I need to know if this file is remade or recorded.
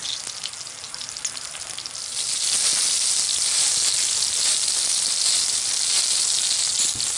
recorded